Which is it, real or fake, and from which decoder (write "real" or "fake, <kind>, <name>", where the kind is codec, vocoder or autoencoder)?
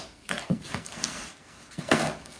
fake, codec, SNAC